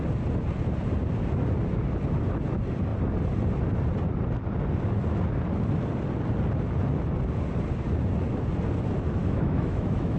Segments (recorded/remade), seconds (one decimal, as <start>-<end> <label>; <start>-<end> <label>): 0.0-9.2 recorded; 9.2-10.2 remade